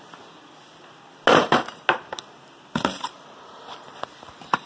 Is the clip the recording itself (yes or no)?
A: yes